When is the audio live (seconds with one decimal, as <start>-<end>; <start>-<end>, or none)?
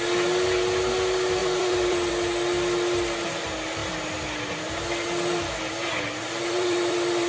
0.0-1.4; 2.1-6.2